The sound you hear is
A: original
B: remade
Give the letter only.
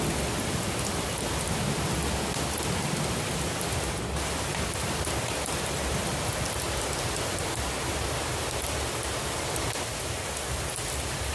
A